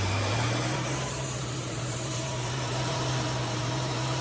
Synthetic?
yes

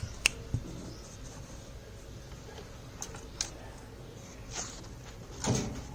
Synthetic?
no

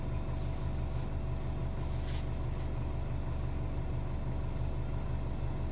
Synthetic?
no